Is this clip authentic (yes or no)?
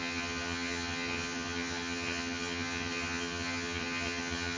no